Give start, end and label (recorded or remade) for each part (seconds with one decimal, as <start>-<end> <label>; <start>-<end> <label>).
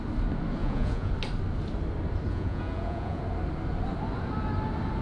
0.0-0.6 recorded; 0.6-1.1 remade; 1.1-2.3 recorded; 2.3-3.2 remade; 3.2-5.0 recorded